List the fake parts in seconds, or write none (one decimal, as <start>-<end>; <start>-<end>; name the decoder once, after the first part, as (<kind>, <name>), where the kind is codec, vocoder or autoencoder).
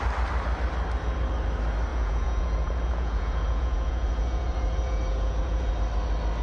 1.9-5.7 (vocoder, Vocos)